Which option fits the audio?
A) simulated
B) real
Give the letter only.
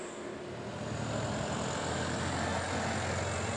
B